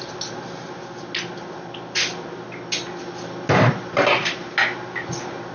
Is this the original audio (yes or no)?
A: yes